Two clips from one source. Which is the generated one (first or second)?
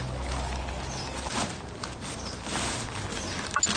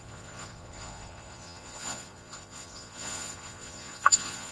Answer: second